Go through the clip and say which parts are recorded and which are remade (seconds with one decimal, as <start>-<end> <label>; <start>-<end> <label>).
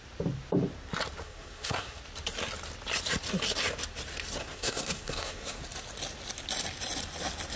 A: 0.0-1.2 recorded; 1.2-2.0 remade; 2.0-4.4 recorded; 4.4-5.6 remade; 5.6-7.6 recorded